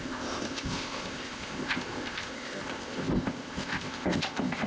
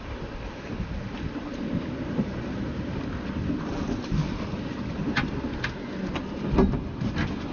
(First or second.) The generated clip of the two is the first